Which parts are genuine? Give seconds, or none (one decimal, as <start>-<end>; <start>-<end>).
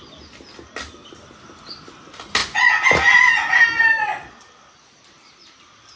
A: 0.0-6.0